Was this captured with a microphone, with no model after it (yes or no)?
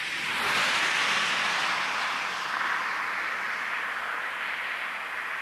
yes